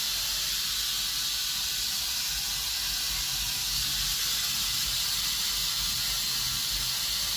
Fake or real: real